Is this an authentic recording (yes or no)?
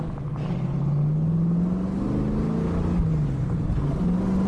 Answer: yes